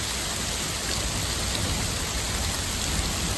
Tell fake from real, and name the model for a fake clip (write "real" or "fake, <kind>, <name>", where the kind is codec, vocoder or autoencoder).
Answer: real